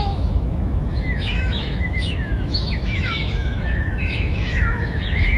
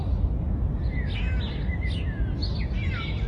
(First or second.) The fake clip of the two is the first